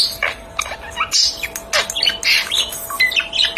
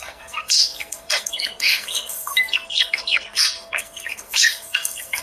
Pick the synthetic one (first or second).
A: second